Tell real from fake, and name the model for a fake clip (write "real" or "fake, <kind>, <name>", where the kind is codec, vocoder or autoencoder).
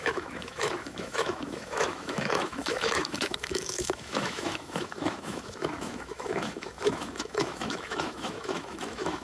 fake, autoencoder, DAC-VAE